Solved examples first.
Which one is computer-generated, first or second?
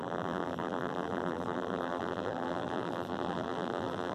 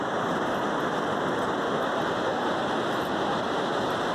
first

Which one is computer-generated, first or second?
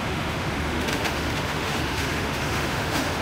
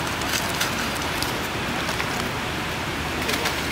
first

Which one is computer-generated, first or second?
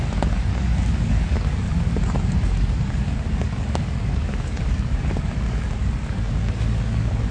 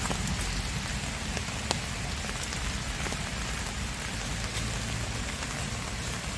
first